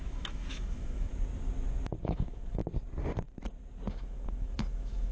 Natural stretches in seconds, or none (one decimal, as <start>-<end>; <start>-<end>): 1.1-2.0; 2.6-3.9